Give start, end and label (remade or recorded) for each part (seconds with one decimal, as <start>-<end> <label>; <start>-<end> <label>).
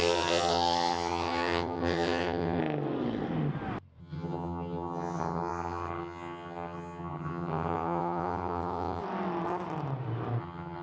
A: 0.0-2.6 remade; 2.6-4.0 recorded; 4.0-9.0 remade; 9.0-10.4 recorded; 10.4-10.8 remade